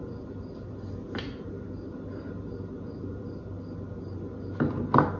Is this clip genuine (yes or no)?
yes